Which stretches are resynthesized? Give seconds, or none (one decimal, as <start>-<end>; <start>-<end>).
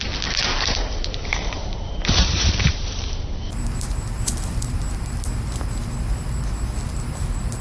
0.5-5.1